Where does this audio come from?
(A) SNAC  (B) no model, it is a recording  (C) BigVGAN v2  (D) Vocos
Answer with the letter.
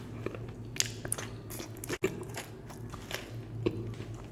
B